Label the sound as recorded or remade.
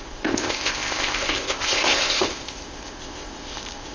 remade